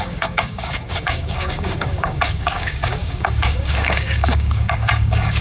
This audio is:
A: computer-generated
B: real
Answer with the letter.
A